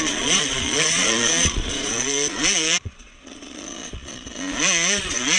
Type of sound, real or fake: fake